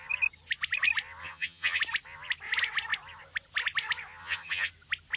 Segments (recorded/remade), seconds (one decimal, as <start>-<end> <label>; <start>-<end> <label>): 0.0-1.2 recorded; 1.2-1.8 remade; 1.8-4.2 recorded; 4.2-4.7 remade; 4.7-5.2 recorded